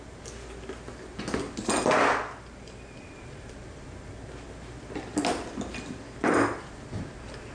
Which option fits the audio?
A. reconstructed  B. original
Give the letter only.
B